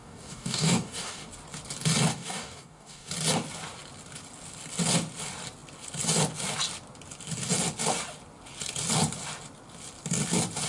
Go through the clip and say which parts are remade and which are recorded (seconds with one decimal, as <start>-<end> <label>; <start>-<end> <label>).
0.0-1.3 remade; 1.3-2.1 recorded; 2.1-3.1 remade; 3.1-10.7 recorded